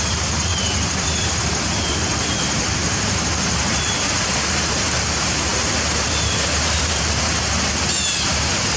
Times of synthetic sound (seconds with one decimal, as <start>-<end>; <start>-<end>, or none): 0.0-0.5; 1.2-8.8